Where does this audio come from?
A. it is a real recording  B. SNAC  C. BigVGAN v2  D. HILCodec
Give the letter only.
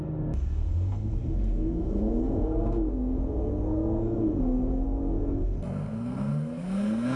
B